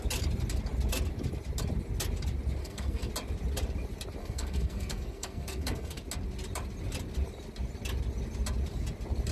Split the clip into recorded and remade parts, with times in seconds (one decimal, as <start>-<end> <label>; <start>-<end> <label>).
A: 0.0-2.6 recorded; 2.6-3.1 remade; 3.1-4.2 recorded; 4.2-6.0 remade; 6.0-9.3 recorded

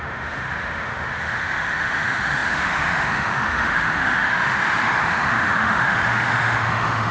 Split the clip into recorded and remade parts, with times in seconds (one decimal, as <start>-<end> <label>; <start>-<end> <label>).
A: 0.0-7.1 remade

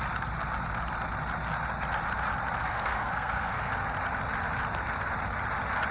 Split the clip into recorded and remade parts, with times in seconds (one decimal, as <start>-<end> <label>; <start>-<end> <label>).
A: 0.0-2.6 recorded; 2.6-3.7 remade; 3.7-5.9 recorded

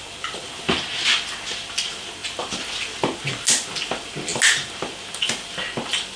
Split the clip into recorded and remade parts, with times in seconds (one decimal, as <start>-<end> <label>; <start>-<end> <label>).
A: 0.0-6.2 recorded

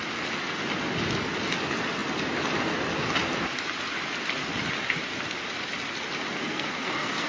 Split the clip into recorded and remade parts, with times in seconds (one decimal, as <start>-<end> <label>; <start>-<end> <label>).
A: 0.0-6.4 recorded; 6.4-7.3 remade